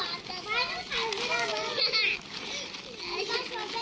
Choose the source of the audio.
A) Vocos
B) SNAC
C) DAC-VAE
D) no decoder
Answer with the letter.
D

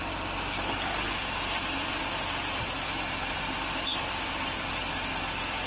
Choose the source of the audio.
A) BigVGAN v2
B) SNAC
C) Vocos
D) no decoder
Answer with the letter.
D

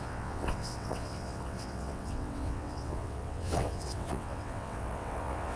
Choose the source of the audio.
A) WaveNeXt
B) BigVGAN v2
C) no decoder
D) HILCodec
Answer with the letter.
A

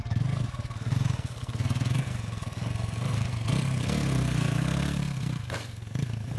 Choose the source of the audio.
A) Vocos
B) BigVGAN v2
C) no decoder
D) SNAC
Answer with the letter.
D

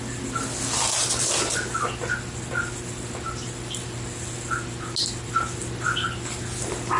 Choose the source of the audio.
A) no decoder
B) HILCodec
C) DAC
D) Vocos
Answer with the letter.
A